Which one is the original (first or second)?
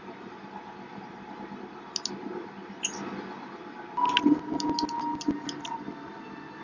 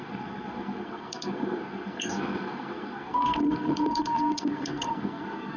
first